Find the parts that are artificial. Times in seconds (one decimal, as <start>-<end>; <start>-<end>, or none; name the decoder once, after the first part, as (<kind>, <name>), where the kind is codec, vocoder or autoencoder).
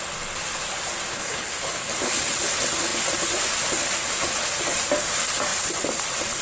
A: 1.1-1.9 (codec, HILCodec)